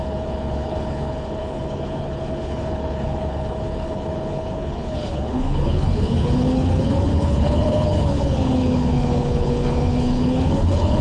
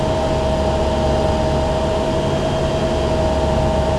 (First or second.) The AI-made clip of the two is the first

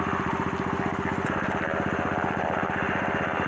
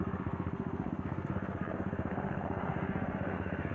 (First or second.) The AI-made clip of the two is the second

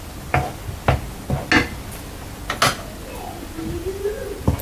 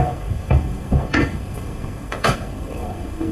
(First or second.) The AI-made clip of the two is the second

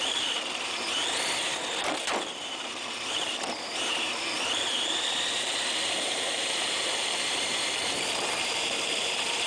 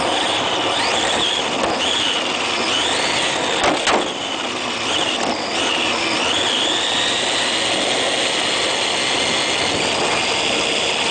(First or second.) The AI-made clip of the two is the first